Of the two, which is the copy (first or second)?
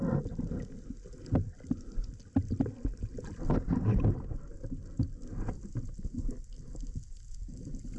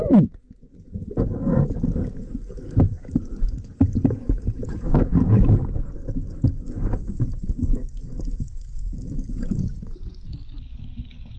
second